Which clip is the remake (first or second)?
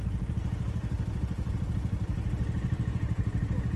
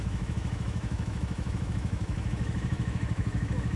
second